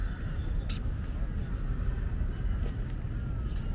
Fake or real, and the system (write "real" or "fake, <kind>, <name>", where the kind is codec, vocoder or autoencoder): real